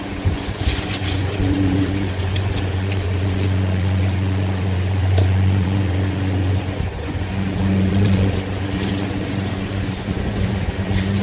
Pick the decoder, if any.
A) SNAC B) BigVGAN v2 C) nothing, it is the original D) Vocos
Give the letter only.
D